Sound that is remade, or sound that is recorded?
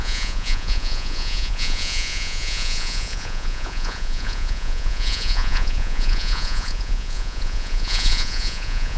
remade